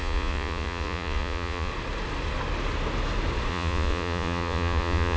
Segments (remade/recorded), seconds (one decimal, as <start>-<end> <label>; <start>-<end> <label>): 0.0-1.7 remade; 1.7-3.5 recorded; 3.5-5.2 remade